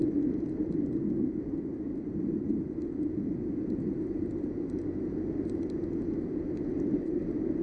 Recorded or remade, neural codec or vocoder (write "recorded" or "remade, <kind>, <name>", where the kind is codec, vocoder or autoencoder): recorded